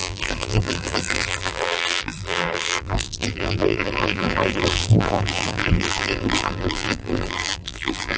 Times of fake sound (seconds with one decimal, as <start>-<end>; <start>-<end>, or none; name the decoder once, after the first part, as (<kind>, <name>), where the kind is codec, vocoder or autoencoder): 0.0-8.2 (vocoder, BigVGAN v2)